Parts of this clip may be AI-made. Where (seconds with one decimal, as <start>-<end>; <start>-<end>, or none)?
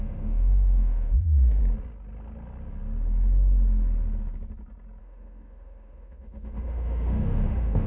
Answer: 0.0-1.6; 5.0-7.9